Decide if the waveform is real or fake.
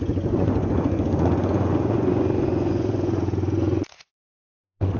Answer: fake